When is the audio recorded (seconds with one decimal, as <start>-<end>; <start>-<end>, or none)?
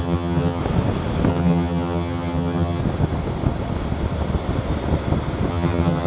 0.6-1.3; 2.8-5.5